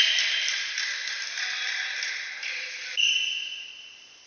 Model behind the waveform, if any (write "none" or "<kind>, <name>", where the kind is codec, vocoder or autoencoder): none